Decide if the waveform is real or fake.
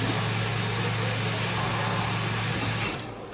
real